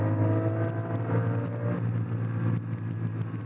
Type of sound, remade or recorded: recorded